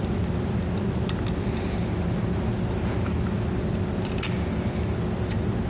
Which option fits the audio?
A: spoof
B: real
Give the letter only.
B